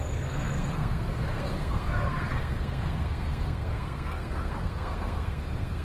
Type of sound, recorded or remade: remade